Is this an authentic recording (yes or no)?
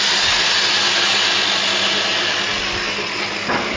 yes